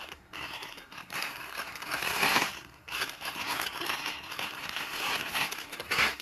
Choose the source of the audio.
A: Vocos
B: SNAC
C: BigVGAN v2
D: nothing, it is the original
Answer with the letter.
B